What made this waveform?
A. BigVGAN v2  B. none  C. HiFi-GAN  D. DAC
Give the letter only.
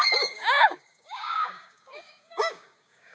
D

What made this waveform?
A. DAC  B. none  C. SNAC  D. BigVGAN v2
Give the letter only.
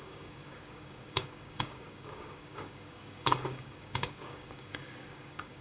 A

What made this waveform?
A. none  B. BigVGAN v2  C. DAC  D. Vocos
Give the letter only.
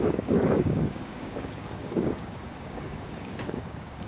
C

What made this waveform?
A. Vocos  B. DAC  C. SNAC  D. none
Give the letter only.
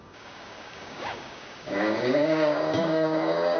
B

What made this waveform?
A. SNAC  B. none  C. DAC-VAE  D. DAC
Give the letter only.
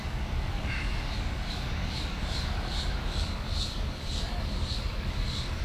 D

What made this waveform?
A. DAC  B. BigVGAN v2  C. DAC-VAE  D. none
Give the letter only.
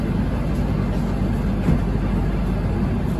D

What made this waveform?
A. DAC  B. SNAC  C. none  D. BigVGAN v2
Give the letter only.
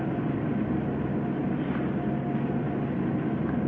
C